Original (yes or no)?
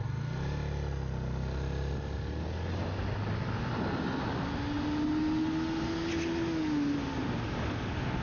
yes